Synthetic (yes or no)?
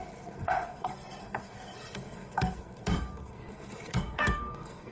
yes